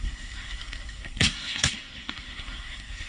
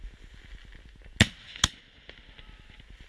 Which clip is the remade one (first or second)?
first